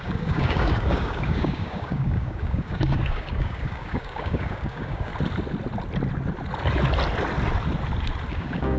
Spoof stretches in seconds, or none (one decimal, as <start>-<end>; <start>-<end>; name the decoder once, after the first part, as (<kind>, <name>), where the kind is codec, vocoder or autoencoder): 0.0-5.1 (codec, DAC); 8.3-8.8